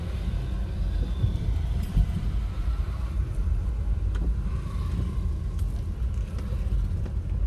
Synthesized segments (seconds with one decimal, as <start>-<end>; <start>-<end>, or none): 1.9-3.7